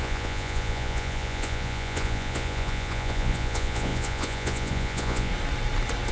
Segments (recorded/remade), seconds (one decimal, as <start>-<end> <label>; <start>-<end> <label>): 0.0-5.3 remade; 5.3-6.1 recorded